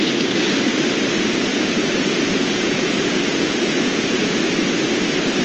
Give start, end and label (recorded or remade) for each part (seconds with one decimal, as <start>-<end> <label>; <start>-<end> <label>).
0.0-1.5 recorded; 1.5-4.3 remade; 4.3-5.4 recorded